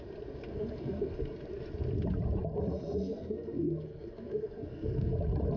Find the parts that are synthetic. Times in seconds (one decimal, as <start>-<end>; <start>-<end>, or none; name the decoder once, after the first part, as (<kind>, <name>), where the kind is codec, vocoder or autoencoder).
0.5-1.1 (codec, SNAC); 3.0-5.1